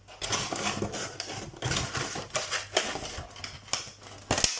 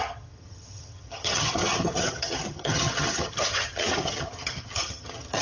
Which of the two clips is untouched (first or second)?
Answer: first